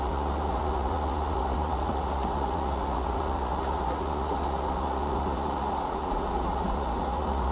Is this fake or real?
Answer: fake